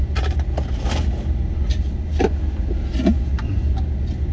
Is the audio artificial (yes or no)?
no